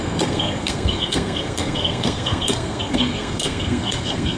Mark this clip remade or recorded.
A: remade